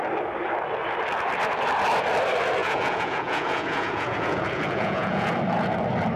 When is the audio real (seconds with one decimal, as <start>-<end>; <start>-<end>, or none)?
0.0-2.6; 5.3-6.2

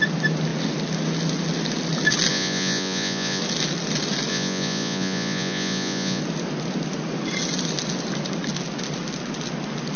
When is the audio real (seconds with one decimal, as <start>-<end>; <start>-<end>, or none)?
0.0-2.3; 3.4-4.3; 6.2-10.0

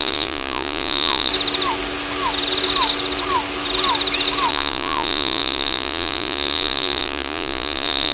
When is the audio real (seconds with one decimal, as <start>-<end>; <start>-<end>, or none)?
1.3-4.5

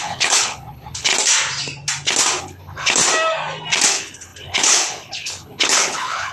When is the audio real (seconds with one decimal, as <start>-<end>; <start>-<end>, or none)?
1.1-2.4; 3.0-3.9

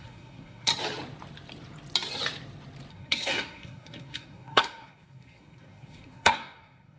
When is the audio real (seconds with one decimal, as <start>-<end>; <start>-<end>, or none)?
0.7-2.9

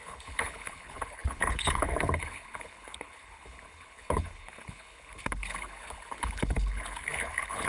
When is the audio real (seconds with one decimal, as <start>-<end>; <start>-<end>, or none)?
none